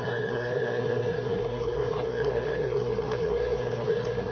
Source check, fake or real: fake